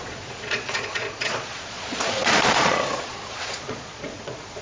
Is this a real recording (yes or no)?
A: no